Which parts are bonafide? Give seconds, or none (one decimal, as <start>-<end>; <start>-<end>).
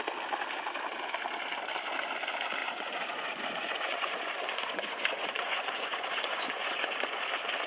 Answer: 0.0-2.6; 7.2-7.7